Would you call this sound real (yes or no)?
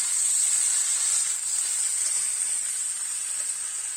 yes